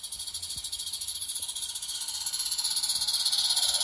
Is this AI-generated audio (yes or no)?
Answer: no